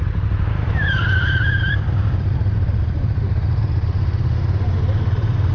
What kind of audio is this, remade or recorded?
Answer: remade